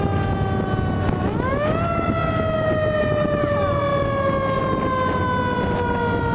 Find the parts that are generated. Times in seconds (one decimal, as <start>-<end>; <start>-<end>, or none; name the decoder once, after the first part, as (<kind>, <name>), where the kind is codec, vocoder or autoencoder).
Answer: none